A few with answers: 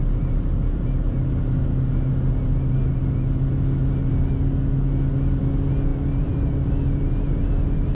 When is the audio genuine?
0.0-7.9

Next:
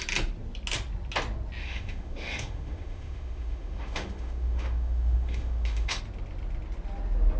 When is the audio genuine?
0.0-1.6; 6.0-7.4

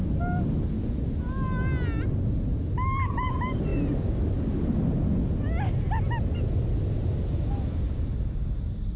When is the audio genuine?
0.0-9.0

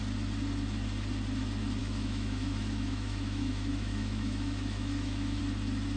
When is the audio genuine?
0.0-1.8; 5.4-6.0

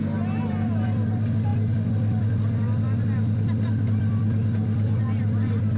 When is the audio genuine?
none